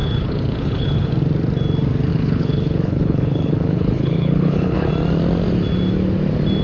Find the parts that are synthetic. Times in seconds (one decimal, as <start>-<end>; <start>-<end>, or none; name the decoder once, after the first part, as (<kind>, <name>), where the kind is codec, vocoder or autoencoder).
0.0-1.1 (codec, HILCodec); 2.1-4.9